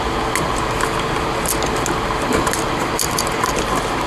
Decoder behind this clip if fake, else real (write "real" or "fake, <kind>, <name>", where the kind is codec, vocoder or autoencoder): real